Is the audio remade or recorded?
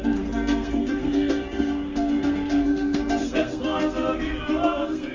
remade